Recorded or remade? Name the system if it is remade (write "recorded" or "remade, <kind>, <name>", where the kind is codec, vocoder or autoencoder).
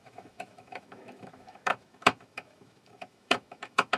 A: remade, autoencoder, DAC-VAE